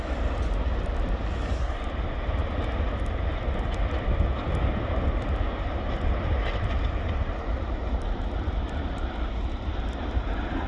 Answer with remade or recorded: recorded